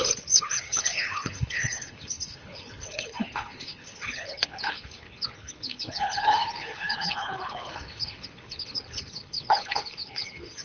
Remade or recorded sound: remade